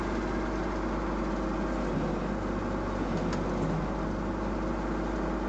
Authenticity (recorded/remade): recorded